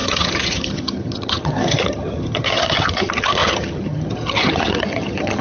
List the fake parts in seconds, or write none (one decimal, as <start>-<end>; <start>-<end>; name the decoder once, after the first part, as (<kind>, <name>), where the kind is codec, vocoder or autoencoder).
0.0-5.4 (vocoder, HiFi-GAN)